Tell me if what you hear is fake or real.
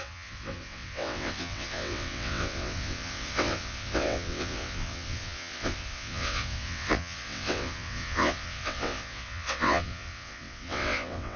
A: fake